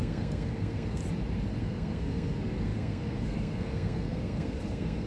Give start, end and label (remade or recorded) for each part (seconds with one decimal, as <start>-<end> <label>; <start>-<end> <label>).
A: 0.0-1.0 remade; 1.0-1.6 recorded; 1.6-5.1 remade